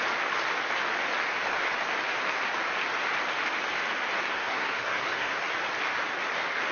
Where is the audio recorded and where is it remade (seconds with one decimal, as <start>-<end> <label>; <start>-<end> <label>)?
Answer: 0.0-4.3 recorded; 4.3-5.3 remade; 5.3-6.7 recorded